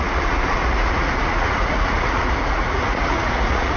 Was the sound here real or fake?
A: fake